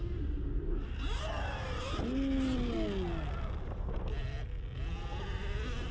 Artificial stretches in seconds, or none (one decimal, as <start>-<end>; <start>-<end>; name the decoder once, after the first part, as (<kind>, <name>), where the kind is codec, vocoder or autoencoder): none